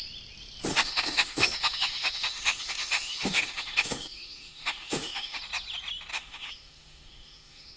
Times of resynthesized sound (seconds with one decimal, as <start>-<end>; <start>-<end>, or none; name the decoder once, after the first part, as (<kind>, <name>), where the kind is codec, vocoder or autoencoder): 0.7-5.4 (autoencoder, DAC-VAE); 6.1-7.8

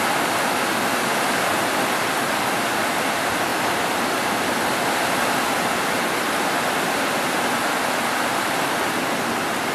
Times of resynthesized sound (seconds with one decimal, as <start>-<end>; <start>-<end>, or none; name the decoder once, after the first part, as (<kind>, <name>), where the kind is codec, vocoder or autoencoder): none

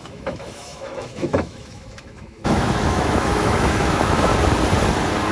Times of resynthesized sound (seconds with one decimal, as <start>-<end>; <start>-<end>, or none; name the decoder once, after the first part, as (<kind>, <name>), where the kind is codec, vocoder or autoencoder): 0.0-4.3 (autoencoder, DAC-VAE)

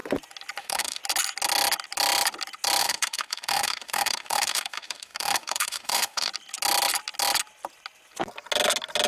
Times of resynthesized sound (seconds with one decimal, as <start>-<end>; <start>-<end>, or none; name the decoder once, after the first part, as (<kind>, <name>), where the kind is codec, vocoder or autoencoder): 0.6-1.0 (autoencoder, DAC-VAE); 2.8-6.3

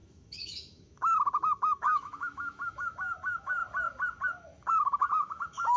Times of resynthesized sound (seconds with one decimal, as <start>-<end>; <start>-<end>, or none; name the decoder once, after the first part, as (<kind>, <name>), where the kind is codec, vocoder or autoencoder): 0.0-3.6 (autoencoder, DAC-VAE); 4.7-5.8

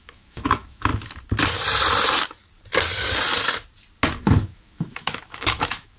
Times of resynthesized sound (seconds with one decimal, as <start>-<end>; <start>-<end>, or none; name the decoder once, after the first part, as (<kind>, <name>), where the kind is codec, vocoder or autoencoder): 0.0-0.9 (autoencoder, DAC-VAE); 4.2-6.0

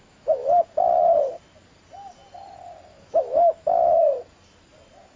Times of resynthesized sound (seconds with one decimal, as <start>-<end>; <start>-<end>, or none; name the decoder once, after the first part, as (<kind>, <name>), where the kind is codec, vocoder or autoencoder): 0.0-0.4 (autoencoder, DAC-VAE); 2.9-4.1

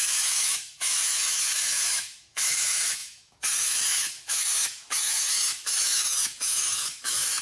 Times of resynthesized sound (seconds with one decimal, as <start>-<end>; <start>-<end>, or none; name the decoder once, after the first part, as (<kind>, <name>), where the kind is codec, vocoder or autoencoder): 0.0-7.4 (autoencoder, DAC-VAE)